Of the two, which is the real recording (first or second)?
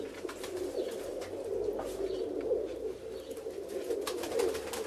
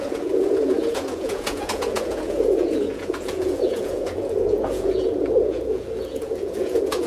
first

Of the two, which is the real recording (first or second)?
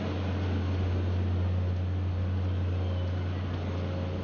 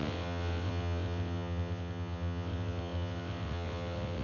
first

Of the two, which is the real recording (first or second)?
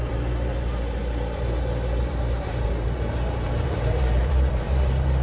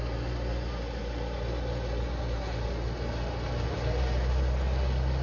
second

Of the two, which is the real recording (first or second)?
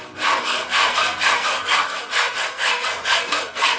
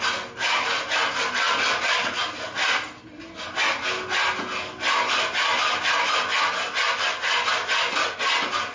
second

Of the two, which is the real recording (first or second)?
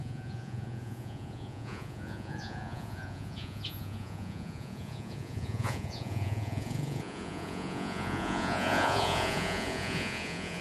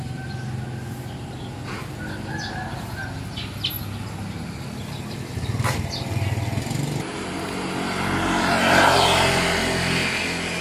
second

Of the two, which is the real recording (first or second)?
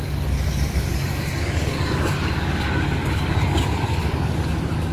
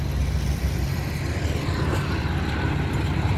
second